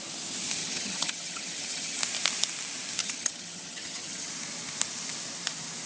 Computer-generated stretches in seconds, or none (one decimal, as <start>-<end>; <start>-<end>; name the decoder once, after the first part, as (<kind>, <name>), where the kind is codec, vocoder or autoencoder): 0.6-2.0 (vocoder, HiFi-GAN); 3.0-4.3